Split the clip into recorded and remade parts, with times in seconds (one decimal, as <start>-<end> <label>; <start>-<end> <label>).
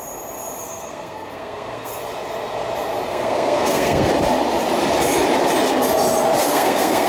0.0-0.6 recorded; 0.6-1.9 remade; 1.9-3.1 recorded; 3.1-4.1 remade; 4.1-6.4 recorded; 6.4-7.1 remade